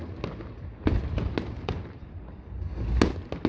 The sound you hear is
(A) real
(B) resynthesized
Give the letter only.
A